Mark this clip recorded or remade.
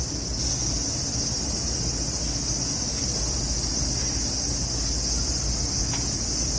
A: recorded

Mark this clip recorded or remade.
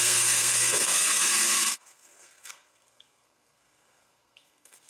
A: remade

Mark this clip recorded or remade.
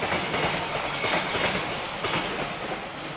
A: recorded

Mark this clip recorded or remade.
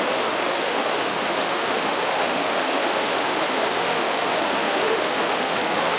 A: remade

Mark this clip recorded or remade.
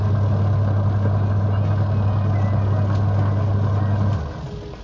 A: recorded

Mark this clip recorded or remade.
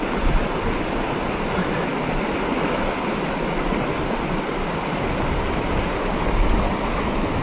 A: recorded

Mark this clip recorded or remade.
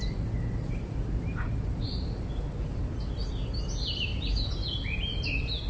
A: recorded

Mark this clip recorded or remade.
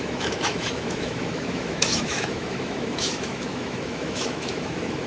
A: remade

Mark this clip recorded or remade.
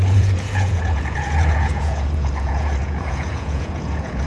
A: remade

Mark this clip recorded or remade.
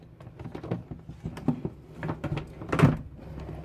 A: recorded